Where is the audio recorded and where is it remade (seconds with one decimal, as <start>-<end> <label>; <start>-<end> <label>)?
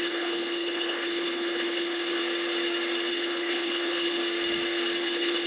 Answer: 0.0-2.2 remade; 2.2-3.1 recorded; 3.1-4.2 remade; 4.2-5.0 recorded; 5.0-5.5 remade